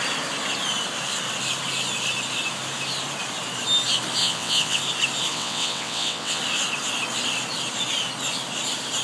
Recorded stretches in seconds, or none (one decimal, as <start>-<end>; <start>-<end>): 0.0-4.2; 4.8-5.3; 6.4-9.0